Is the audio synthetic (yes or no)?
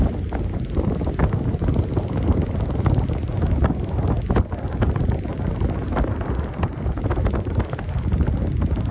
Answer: no